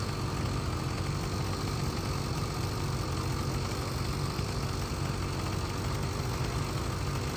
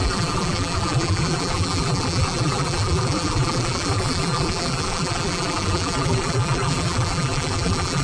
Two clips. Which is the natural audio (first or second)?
first